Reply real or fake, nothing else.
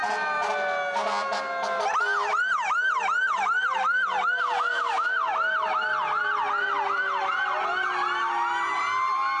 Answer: real